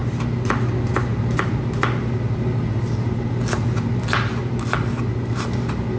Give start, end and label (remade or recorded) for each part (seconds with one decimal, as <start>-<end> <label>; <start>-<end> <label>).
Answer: 0.0-6.0 recorded